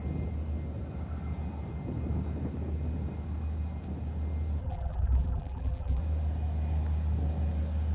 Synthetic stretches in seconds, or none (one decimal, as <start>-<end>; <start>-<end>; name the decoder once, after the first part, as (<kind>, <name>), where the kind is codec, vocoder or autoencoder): 4.6-6.0 (vocoder, BigVGAN v2)